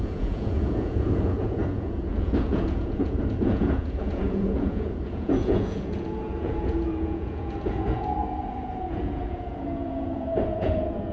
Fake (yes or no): yes